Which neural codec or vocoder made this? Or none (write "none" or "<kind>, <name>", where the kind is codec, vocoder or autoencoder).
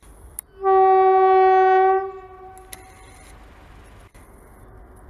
none